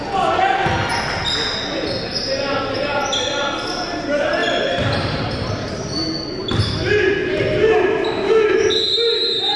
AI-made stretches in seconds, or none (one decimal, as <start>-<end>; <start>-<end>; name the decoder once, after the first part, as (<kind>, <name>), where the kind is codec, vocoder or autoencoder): 4.4-5.7 (vocoder, BigVGAN v2)